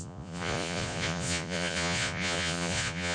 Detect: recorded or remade remade